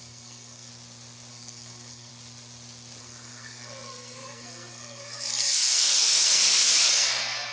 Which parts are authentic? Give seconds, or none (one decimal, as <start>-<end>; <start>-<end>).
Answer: 0.7-1.3; 2.1-3.0